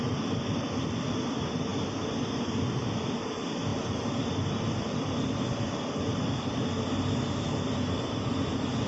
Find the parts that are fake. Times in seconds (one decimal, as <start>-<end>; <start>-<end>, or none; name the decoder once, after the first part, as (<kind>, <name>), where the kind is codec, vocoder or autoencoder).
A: none